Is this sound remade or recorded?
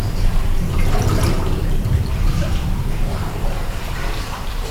remade